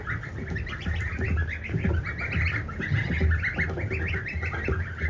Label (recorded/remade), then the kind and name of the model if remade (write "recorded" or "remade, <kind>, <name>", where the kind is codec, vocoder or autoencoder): recorded